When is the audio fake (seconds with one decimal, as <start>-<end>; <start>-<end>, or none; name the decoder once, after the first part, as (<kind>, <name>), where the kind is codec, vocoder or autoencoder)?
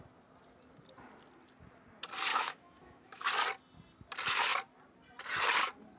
2.3-3.3 (autoencoder, DAC-VAE)